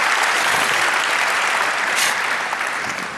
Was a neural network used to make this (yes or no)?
no